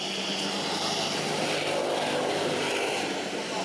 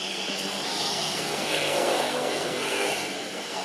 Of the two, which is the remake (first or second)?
second